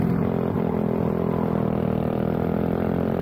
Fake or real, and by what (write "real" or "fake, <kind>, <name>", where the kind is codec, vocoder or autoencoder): real